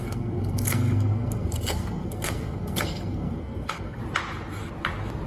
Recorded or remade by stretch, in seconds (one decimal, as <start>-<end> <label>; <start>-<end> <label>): 0.0-4.0 remade; 4.0-5.3 recorded